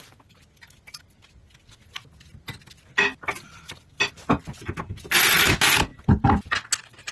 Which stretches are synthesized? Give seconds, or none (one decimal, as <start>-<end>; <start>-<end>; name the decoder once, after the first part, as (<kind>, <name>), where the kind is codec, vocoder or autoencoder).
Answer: none